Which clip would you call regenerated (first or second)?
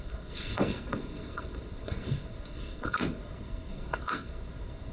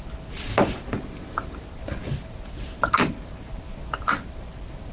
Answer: first